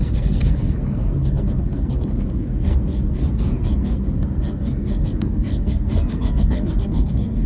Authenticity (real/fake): fake